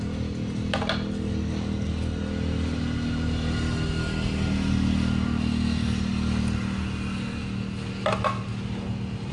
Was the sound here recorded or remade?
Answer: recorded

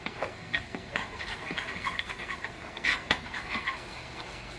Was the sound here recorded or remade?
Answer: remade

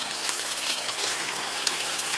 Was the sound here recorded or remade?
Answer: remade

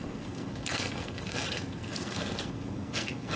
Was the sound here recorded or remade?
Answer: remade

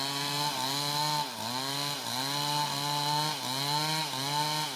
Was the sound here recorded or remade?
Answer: recorded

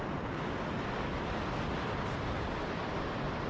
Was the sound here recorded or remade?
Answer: recorded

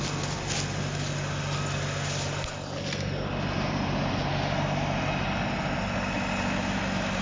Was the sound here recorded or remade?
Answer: recorded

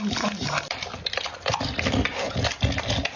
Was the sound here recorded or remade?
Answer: recorded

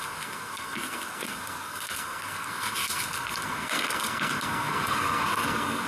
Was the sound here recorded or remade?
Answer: remade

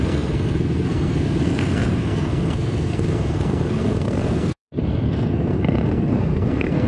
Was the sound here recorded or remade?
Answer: remade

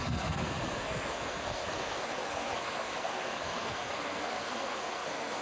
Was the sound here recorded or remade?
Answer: remade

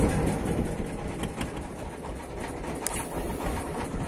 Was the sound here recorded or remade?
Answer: recorded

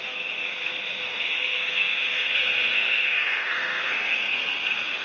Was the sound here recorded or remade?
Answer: remade